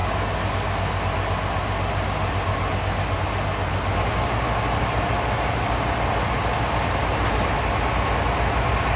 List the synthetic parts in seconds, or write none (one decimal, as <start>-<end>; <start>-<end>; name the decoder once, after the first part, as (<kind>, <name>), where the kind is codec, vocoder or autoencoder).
none